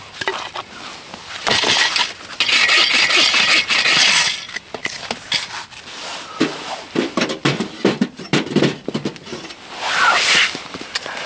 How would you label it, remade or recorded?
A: remade